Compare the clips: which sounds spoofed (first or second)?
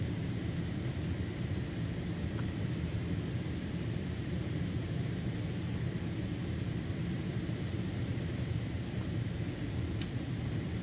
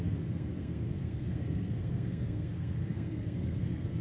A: second